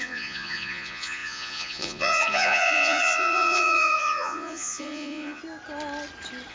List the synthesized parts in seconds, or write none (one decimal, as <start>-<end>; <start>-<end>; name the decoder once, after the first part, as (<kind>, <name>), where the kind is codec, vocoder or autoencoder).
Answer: 0.0-5.4 (vocoder, Vocos)